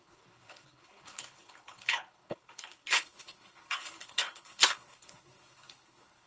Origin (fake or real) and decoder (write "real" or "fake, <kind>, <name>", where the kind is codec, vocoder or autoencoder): fake, codec, HILCodec